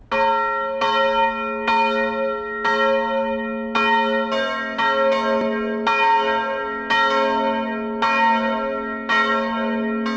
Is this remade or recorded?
recorded